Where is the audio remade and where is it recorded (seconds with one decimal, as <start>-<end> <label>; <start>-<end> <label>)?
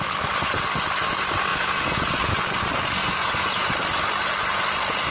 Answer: 0.0-1.5 recorded; 1.5-2.4 remade; 2.4-3.0 recorded; 3.0-3.7 remade; 3.7-5.1 recorded